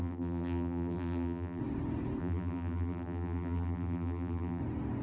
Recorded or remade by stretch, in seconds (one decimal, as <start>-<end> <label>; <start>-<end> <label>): 0.0-1.6 remade; 1.6-2.2 recorded; 2.2-4.6 remade; 4.6-5.0 recorded